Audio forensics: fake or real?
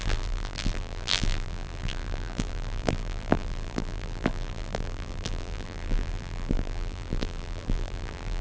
fake